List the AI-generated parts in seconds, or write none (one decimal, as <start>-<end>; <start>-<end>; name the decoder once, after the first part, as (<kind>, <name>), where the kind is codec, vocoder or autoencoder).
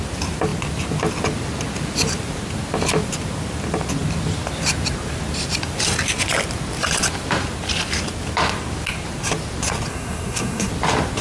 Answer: 9.9-10.7 (codec, SNAC)